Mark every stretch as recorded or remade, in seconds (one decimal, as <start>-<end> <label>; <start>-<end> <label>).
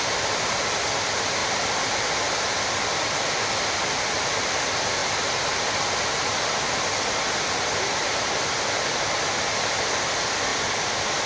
0.0-1.4 recorded; 1.4-3.0 remade; 3.0-5.0 recorded; 5.0-7.5 remade; 7.5-10.5 recorded; 10.5-11.3 remade